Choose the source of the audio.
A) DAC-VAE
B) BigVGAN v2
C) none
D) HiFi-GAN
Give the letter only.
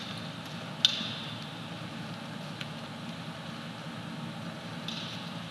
C